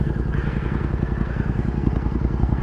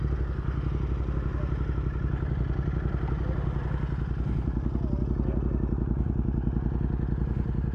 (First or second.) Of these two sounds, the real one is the second